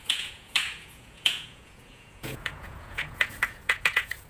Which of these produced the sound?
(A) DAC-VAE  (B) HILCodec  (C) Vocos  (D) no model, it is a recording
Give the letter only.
C